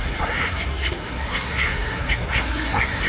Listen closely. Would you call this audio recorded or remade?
remade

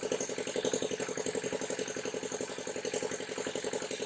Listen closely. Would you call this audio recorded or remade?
recorded